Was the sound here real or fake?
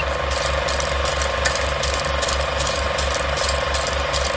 real